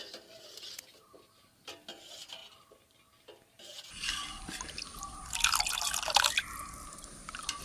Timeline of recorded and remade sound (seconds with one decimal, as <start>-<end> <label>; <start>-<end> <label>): 0.0-7.6 recorded